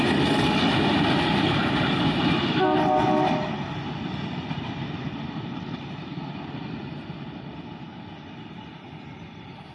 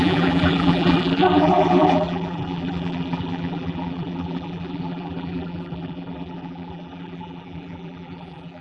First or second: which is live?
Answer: first